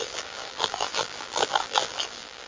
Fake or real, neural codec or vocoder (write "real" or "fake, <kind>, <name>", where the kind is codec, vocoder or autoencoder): fake, vocoder, BigVGAN v2